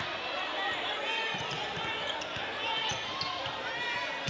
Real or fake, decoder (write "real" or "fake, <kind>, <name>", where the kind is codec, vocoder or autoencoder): real